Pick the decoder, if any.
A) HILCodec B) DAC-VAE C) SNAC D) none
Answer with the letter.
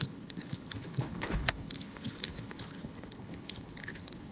A